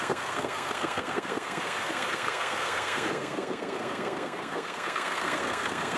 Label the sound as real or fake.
fake